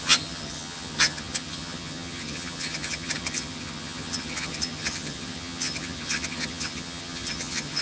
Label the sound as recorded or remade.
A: remade